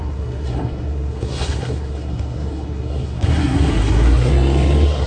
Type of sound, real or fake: fake